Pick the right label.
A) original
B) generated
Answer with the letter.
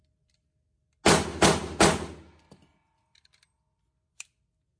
A